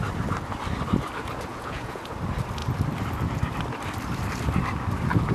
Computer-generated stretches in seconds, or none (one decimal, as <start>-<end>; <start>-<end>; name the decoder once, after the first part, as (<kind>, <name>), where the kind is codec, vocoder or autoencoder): 1.5-2.0 (vocoder, Vocos)